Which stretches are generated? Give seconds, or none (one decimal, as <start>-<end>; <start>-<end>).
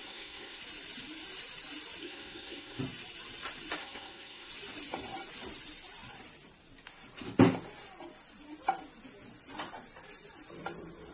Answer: 0.0-0.6; 2.0-2.8; 3.8-4.5